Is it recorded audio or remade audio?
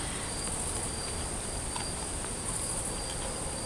recorded